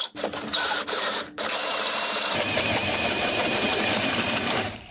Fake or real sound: fake